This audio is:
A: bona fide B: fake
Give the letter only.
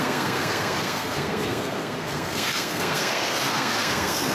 B